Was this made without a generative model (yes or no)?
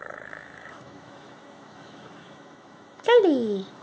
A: no